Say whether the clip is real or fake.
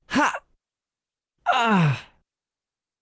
real